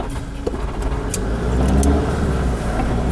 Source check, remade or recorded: recorded